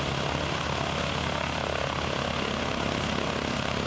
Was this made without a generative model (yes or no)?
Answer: yes